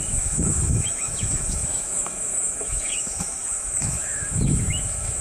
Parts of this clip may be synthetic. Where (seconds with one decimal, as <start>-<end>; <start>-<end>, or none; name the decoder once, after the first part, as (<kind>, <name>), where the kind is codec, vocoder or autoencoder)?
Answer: 0.0-5.2 (autoencoder, DAC-VAE)